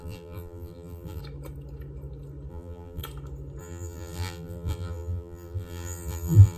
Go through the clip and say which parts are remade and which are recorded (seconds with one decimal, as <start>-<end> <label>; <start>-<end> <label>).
0.0-1.2 remade; 1.2-2.5 recorded; 2.5-3.0 remade; 3.0-3.6 recorded; 3.6-6.6 remade